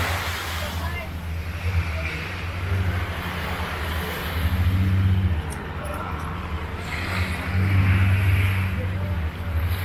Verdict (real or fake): real